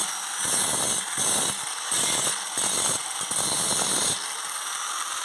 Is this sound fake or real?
real